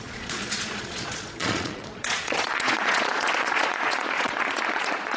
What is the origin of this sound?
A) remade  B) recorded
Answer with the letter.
A